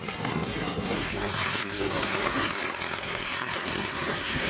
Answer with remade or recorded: remade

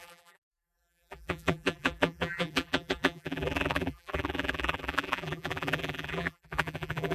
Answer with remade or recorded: remade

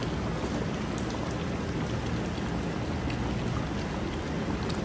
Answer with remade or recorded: recorded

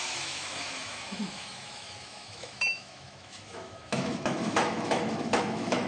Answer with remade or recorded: remade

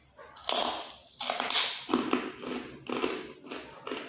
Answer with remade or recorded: recorded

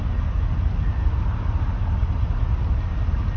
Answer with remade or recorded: recorded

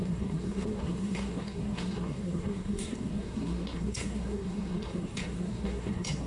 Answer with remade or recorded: remade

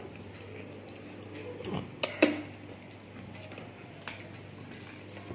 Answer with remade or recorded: recorded